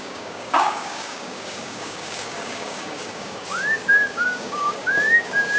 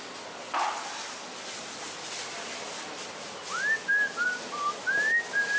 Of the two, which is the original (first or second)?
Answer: second